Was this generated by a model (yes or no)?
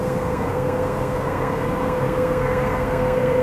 yes